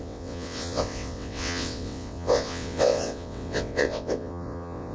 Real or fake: fake